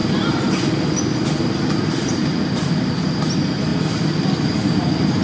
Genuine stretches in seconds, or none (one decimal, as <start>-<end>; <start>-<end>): 0.0-5.2